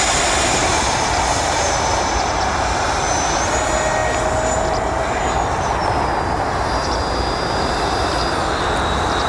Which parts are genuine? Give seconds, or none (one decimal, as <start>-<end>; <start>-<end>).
0.0-0.6; 3.0-9.3